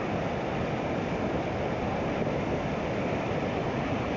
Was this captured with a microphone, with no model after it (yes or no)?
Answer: yes